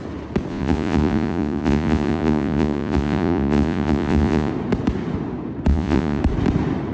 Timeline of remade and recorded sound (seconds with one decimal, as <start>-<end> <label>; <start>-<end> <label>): 0.0-0.5 recorded; 0.5-4.5 remade; 4.5-5.7 recorded; 5.7-6.2 remade; 6.2-6.9 recorded